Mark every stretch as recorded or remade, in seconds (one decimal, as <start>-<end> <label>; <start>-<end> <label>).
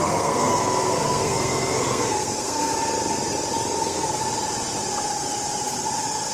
0.0-2.7 remade; 2.7-3.8 recorded; 3.8-4.2 remade; 4.2-6.3 recorded